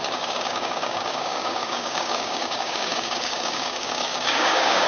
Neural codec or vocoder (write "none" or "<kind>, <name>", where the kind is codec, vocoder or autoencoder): codec, DAC